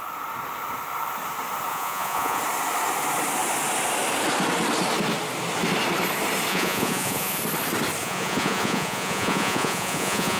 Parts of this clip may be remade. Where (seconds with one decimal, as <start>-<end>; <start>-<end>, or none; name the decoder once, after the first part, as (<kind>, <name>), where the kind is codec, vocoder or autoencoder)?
1.7-2.4 (vocoder, Vocos); 6.5-7.4; 8.0-10.4